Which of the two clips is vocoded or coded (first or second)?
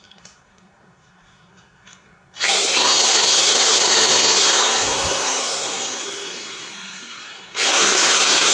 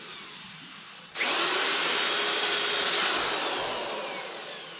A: first